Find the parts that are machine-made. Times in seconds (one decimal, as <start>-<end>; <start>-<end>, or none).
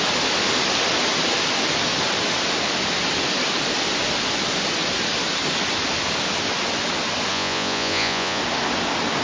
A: 7.3-8.4